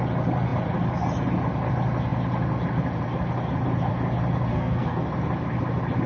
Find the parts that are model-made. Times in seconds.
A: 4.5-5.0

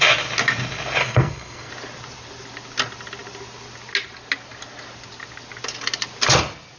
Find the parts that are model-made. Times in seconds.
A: 1.0-1.7

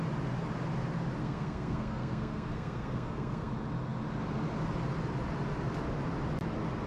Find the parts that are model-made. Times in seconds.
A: 1.2-3.5